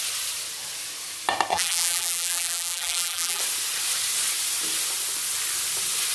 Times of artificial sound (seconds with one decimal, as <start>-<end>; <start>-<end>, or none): 1.5-3.4

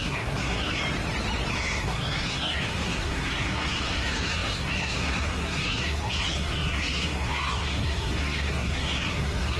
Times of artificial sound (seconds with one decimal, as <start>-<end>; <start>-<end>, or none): 0.0-0.8; 1.5-9.6